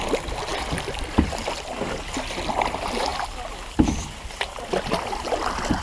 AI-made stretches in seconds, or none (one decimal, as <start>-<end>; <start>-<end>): 0.5-1.3